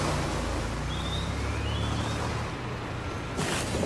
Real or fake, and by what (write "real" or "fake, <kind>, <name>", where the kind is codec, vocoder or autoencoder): real